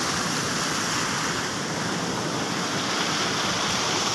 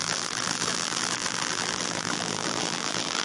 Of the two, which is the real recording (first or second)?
first